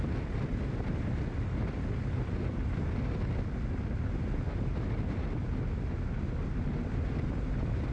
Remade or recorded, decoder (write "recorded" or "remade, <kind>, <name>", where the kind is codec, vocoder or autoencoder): recorded